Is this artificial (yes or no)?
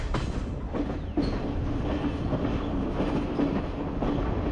no